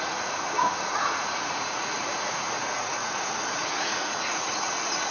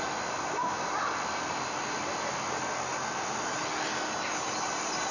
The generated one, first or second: first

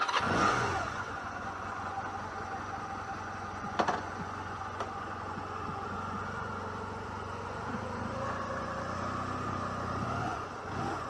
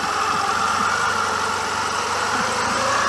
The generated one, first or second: first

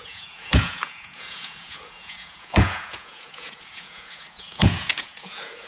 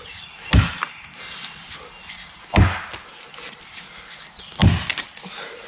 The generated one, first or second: first